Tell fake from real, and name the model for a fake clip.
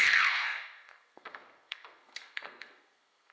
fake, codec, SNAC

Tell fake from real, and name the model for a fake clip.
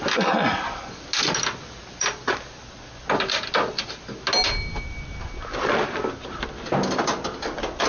real